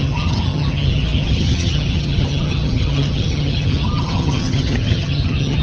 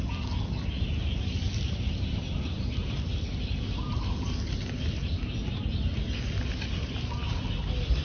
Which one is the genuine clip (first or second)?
second